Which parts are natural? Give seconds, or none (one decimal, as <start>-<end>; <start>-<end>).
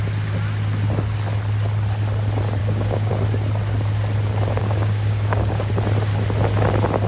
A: 0.0-2.6; 3.1-4.6; 5.7-7.1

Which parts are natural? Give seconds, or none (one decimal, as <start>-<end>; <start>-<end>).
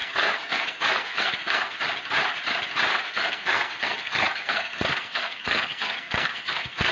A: 1.8-2.9